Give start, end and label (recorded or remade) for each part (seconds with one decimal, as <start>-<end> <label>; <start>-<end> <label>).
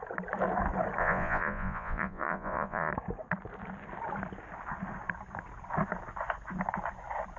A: 0.0-1.0 recorded; 1.0-2.9 remade; 2.9-7.4 recorded